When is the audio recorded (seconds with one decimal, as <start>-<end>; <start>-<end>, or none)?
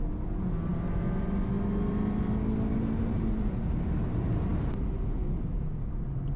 0.0-6.4